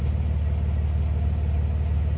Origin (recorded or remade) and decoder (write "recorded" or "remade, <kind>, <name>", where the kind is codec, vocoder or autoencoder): recorded